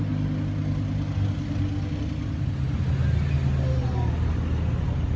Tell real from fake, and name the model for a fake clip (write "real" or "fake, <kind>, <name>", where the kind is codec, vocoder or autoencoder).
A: real